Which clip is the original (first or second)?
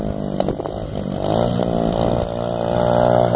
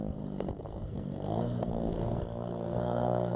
first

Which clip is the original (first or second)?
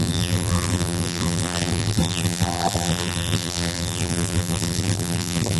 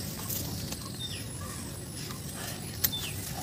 second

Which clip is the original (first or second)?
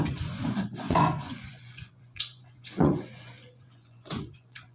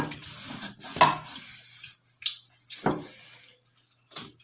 second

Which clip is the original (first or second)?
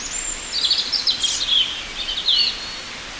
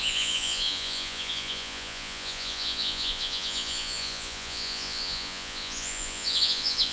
first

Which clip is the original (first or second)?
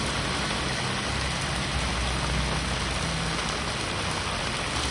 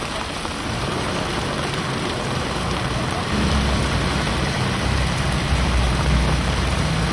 first